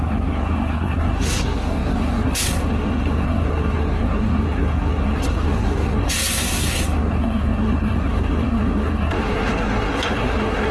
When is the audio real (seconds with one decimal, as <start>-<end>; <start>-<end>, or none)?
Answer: none